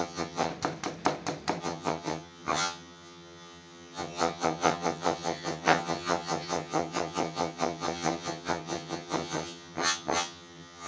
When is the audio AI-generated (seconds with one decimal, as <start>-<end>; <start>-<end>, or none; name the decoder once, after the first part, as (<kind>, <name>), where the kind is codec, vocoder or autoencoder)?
0.0-0.5 (vocoder, HiFi-GAN); 1.6-10.9